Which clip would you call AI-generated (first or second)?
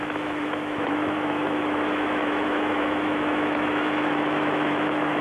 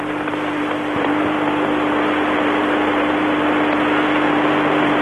first